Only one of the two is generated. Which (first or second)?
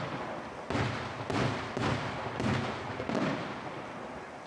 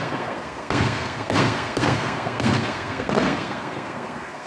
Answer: second